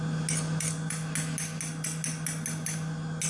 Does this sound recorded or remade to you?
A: recorded